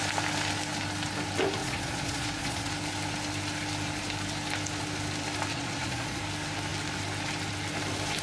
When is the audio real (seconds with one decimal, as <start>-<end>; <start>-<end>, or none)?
0.0-1.6; 2.7-5.5; 6.2-8.2